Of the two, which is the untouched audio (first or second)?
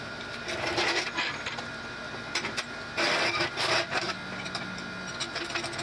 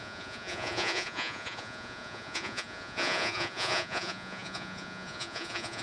first